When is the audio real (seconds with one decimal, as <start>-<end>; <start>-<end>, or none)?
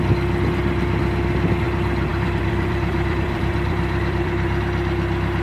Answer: 0.0-2.1; 4.6-5.4